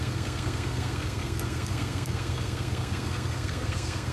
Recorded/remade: remade